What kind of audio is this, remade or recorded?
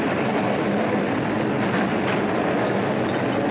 recorded